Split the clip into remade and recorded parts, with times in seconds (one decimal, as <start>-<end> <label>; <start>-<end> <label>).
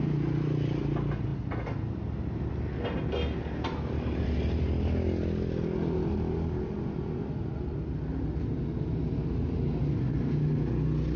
0.0-11.2 recorded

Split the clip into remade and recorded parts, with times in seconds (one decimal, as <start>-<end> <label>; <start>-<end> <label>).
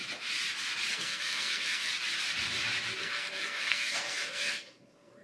0.0-0.9 recorded; 0.9-1.9 remade; 1.9-3.0 recorded; 3.0-5.2 remade